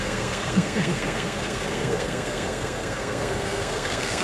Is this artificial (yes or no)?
yes